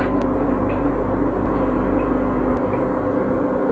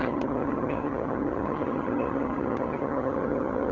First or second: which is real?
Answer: first